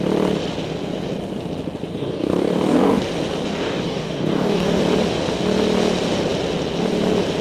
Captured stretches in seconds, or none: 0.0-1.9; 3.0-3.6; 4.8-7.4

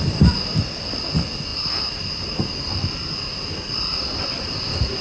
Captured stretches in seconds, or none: 0.0-1.5; 2.1-3.9

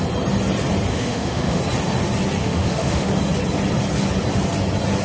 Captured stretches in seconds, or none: 0.0-0.9; 1.6-2.4; 3.1-5.0

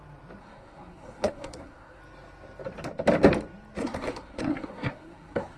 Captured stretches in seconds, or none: 0.0-0.4; 2.0-3.8

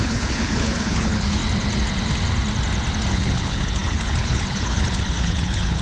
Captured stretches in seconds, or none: 1.4-3.1